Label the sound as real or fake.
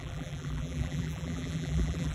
fake